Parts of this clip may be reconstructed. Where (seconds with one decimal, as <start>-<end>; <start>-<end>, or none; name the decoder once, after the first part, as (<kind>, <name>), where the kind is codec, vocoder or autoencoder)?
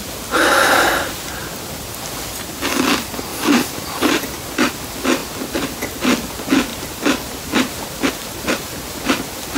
3.3-4.7 (vocoder, BigVGAN v2); 6.7-8.1